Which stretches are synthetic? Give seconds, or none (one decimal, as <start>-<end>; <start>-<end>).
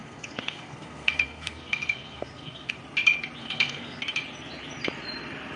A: 0.0-2.7; 3.4-4.0